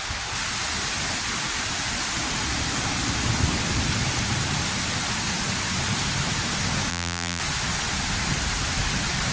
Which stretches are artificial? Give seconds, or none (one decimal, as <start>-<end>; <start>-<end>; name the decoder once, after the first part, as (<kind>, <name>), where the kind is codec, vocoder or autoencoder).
6.9-7.4 (vocoder, BigVGAN v2)